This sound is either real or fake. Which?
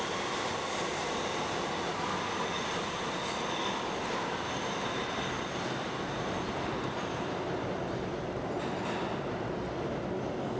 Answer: real